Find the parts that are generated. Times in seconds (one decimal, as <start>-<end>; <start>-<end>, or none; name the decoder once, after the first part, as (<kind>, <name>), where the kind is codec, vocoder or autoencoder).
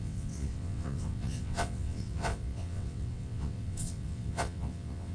0.0-5.1 (vocoder, WaveNeXt)